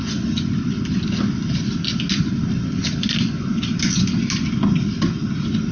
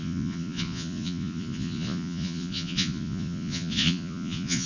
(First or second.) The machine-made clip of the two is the second